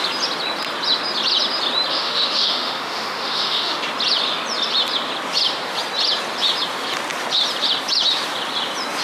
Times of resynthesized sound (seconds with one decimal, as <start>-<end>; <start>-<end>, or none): 1.9-3.8